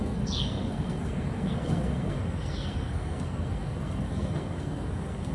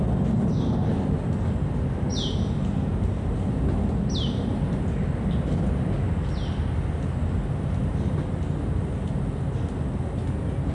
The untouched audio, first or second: second